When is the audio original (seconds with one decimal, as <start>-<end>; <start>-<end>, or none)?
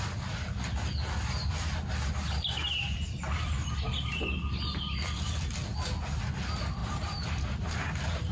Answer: 0.0-6.8